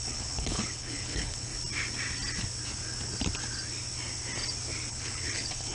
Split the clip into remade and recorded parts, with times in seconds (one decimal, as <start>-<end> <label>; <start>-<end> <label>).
0.0-1.5 remade; 1.5-4.9 recorded; 4.9-5.7 remade